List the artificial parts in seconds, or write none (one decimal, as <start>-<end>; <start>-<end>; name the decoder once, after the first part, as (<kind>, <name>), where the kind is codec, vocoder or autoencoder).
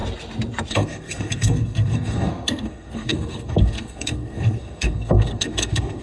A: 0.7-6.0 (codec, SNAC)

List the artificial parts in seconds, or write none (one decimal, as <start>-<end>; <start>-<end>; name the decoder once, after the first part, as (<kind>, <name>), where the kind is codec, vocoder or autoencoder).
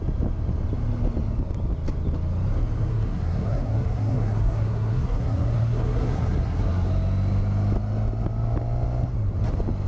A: 2.9-6.9 (codec, SNAC)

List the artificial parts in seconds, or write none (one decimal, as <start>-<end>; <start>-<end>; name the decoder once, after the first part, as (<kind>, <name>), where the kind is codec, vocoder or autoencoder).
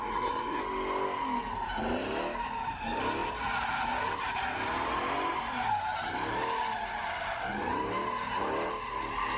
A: 0.0-0.6 (codec, SNAC)